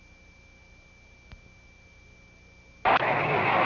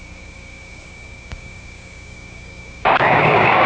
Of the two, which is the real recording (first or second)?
first